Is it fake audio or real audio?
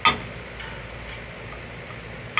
real